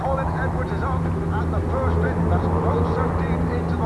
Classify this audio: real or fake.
real